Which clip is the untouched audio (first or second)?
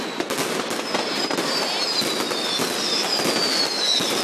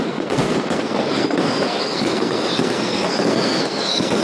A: first